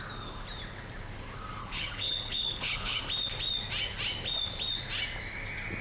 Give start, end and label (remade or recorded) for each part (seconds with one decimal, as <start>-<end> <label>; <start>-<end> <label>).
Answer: 0.0-1.6 recorded; 1.6-3.0 remade; 3.0-5.8 recorded